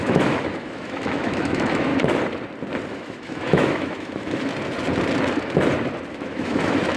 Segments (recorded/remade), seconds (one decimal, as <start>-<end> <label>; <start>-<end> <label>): 0.0-1.9 remade; 1.9-2.9 recorded; 2.9-4.5 remade; 4.5-6.1 recorded; 6.1-7.0 remade